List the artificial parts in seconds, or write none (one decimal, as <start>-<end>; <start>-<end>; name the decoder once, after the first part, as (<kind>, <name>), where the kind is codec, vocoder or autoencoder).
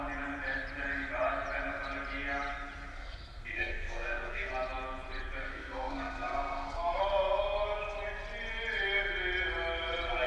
2.9-4.5 (codec, SNAC); 5.4-7.0